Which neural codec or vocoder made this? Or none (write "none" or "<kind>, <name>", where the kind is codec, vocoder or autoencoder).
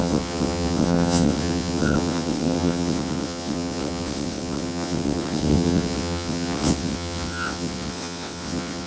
vocoder, WaveNeXt